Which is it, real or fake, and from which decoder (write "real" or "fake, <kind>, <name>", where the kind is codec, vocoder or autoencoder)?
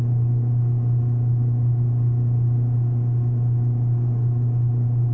real